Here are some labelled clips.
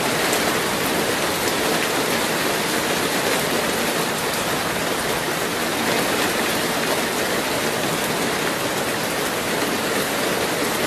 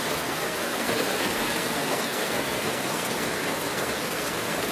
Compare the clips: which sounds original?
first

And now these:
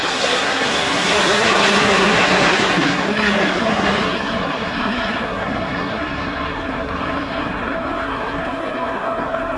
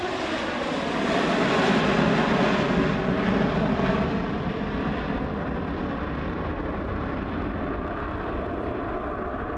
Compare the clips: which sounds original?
second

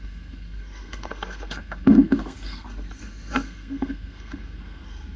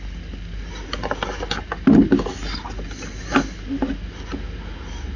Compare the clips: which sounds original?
second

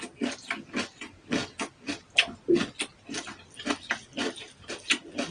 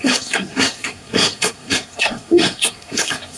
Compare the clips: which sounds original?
first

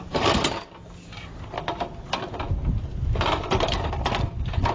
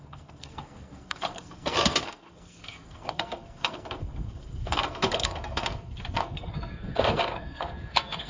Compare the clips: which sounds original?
first